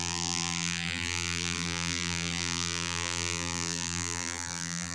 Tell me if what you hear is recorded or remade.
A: remade